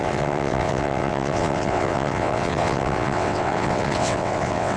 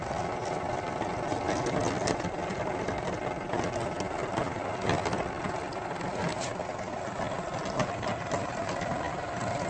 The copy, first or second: first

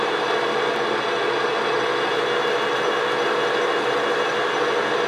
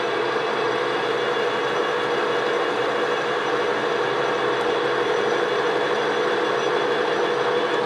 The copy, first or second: second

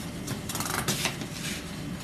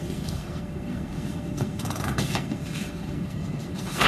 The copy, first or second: second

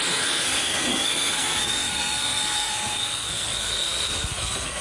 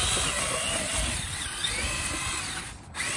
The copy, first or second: first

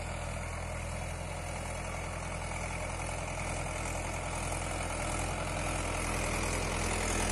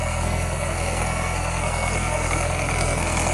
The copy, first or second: second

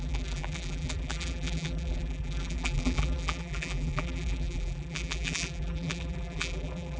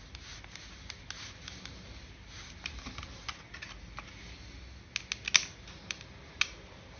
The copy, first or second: first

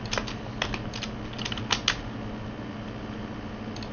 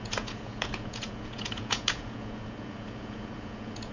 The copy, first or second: second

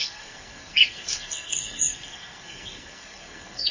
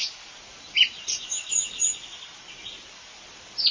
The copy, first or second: first